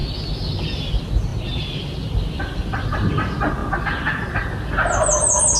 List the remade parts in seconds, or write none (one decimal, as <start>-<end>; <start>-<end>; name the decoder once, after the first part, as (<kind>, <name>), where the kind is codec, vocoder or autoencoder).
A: none